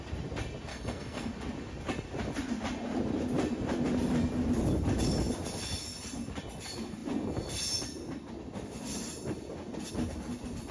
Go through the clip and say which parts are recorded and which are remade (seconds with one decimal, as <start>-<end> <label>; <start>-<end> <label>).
0.0-0.7 recorded; 0.7-1.3 remade; 1.3-10.7 recorded